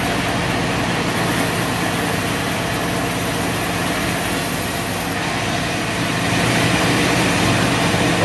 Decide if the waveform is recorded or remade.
recorded